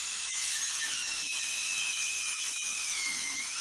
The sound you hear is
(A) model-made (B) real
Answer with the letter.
A